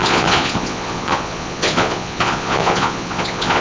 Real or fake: fake